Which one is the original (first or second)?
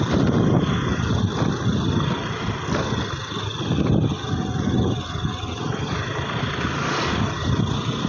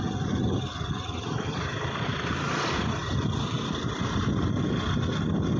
first